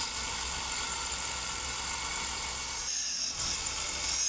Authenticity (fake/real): real